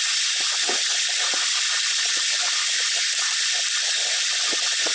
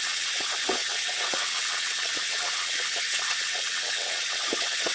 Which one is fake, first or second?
second